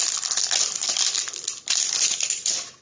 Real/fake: real